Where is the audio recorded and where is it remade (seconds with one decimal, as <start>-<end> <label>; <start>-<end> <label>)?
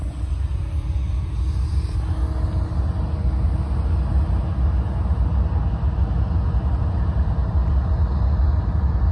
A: 0.0-9.1 recorded